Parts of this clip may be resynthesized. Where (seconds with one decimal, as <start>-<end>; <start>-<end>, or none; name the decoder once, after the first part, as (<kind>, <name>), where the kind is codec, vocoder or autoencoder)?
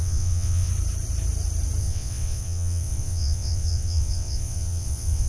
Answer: 0.0-0.7 (vocoder, WaveNeXt); 1.8-5.3